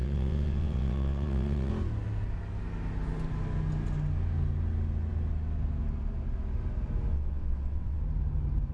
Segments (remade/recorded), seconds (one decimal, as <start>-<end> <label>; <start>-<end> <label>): 0.0-1.7 remade; 1.7-7.1 recorded; 7.1-8.0 remade; 8.0-8.7 recorded